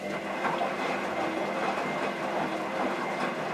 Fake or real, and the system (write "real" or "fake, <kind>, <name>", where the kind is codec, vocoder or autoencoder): real